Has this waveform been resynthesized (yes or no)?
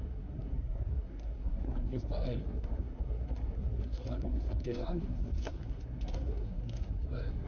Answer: yes